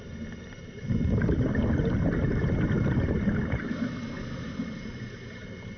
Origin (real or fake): real